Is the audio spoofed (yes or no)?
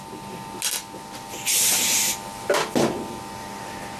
no